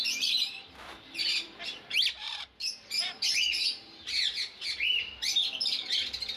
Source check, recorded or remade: remade